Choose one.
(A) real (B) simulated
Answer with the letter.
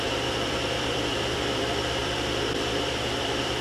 B